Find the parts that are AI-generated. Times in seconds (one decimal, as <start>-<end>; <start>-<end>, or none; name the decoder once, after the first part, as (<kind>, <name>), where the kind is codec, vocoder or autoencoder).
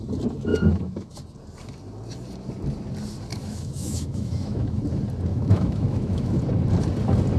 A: 0.5-1.1 (autoencoder, DAC-VAE); 3.3-4.8; 5.3-6.4